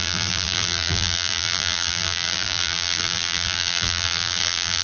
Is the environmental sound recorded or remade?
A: remade